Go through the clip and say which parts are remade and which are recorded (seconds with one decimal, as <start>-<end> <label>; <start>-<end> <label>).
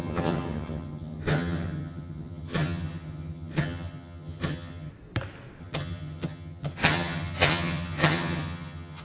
0.0-4.9 remade; 4.9-5.6 recorded; 5.6-9.0 remade